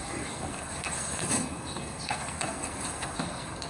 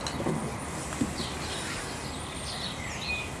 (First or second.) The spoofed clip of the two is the first